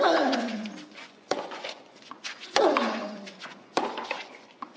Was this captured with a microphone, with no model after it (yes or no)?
no